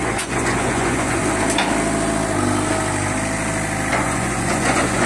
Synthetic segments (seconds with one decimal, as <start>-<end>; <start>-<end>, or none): 0.0-1.2; 3.9-5.1

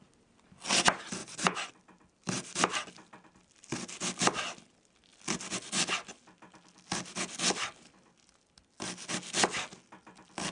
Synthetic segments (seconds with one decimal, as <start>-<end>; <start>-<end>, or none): 1.2-1.7

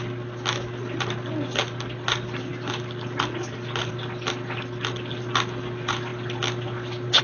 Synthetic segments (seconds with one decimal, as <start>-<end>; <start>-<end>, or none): none

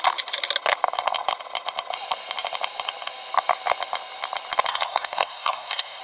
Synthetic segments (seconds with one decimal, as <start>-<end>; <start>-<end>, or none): 4.7-6.0

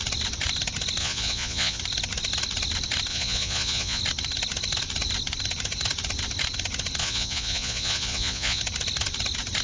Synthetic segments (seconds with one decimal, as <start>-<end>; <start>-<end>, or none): 1.0-1.8; 3.1-4.0; 7.0-8.6